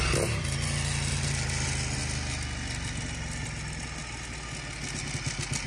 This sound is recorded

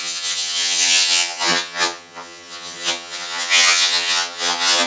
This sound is remade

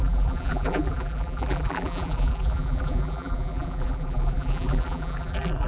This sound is remade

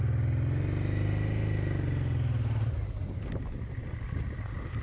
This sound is recorded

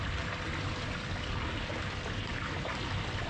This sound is recorded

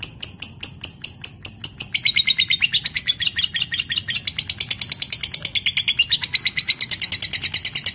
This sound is recorded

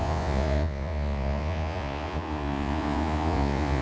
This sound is remade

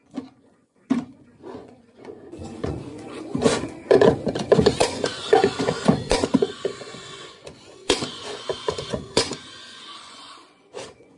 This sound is remade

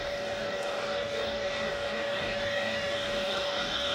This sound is remade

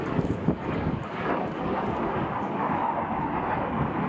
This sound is remade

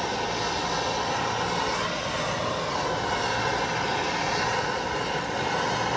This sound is recorded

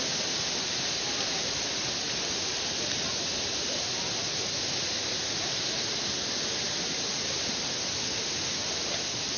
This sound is recorded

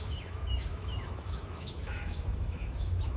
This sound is remade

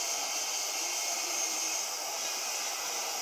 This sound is recorded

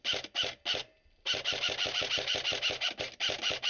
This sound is recorded